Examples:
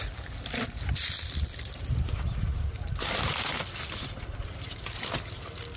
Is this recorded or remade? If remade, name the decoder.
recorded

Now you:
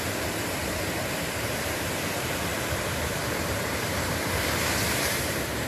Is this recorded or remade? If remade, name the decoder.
remade, vocoder, BigVGAN v2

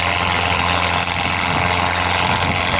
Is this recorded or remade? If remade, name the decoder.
recorded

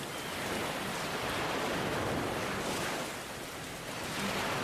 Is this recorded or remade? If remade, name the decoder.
recorded